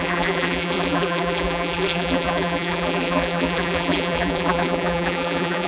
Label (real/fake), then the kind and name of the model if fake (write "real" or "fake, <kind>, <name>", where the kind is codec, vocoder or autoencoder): fake, vocoder, BigVGAN v2